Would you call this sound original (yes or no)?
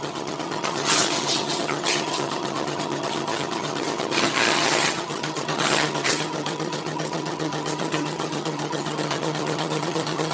no